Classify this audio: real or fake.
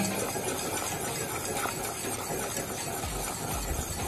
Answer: real